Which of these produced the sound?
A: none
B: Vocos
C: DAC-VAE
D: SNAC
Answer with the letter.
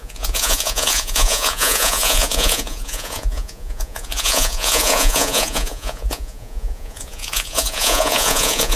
B